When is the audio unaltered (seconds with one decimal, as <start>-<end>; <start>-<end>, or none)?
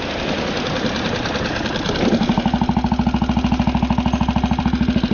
0.0-5.1